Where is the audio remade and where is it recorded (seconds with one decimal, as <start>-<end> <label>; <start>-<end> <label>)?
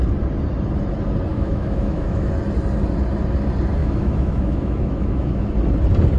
0.0-1.3 recorded; 1.3-2.3 remade; 2.3-3.8 recorded; 3.8-5.5 remade; 5.5-6.2 recorded